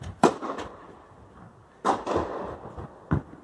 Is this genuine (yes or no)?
yes